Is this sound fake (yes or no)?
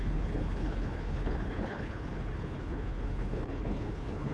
yes